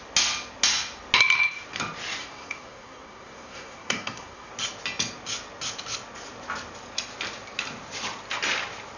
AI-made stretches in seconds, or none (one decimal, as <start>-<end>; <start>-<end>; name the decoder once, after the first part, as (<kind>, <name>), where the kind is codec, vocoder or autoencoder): 2.2-4.5 (codec, SNAC)